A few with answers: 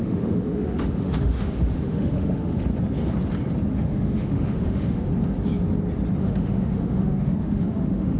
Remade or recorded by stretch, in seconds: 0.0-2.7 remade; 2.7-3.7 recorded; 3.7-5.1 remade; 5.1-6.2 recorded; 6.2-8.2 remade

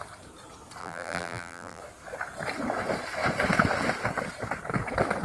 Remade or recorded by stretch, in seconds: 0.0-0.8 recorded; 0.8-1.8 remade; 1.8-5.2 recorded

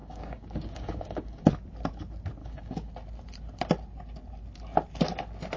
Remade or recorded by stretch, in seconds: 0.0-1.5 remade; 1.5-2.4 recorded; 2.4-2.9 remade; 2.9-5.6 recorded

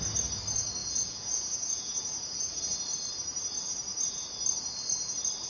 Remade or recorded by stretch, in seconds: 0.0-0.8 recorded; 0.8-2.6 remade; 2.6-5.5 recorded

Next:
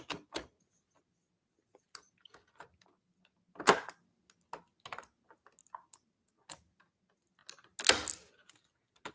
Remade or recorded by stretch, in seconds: 0.0-9.1 recorded

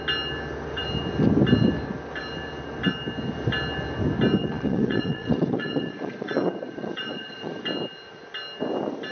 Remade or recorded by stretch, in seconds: 0.0-4.4 recorded; 4.4-7.6 remade; 7.6-9.1 recorded